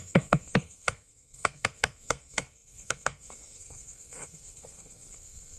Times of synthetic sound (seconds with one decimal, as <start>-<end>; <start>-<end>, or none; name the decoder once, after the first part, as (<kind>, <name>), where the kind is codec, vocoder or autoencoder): 0.0-5.6 (codec, SNAC)